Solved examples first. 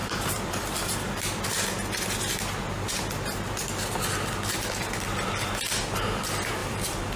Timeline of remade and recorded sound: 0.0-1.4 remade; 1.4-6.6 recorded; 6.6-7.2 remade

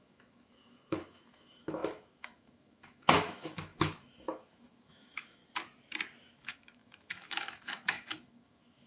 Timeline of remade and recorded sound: 0.0-5.4 remade; 5.4-6.3 recorded; 6.3-8.9 remade

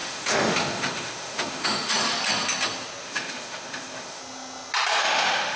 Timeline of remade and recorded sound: 0.0-1.9 remade; 1.9-3.0 recorded; 3.0-4.2 remade; 4.2-5.0 recorded; 5.0-5.6 remade